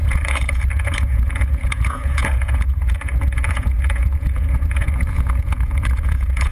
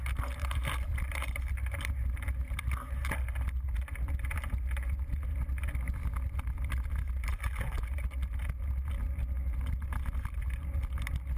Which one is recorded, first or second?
second